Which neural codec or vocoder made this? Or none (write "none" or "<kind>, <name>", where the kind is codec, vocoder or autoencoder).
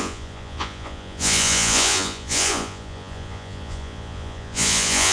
vocoder, Vocos